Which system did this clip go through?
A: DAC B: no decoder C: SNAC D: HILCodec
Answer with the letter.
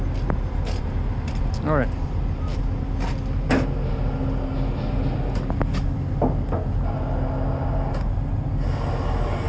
B